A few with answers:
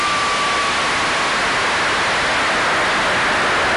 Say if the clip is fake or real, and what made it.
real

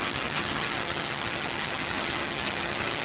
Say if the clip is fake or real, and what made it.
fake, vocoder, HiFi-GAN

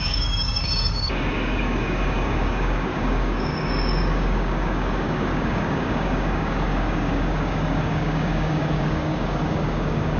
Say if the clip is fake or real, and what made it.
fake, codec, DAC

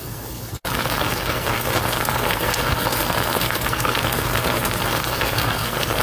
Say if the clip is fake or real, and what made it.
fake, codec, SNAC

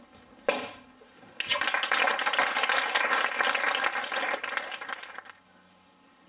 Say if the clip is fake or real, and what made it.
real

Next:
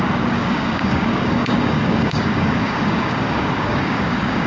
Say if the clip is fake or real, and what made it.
fake, codec, DAC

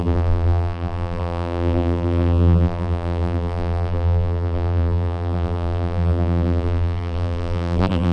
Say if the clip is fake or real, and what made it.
fake, vocoder, BigVGAN v2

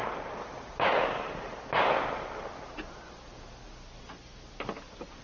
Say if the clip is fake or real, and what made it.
real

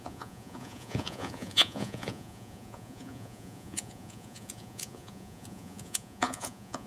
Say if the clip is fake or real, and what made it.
fake, vocoder, Vocos